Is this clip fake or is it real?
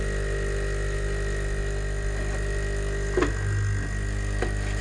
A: real